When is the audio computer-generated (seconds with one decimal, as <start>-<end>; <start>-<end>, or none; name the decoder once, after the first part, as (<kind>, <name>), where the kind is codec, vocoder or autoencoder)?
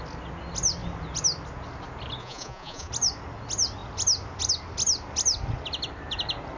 2.2-2.9 (vocoder, Vocos)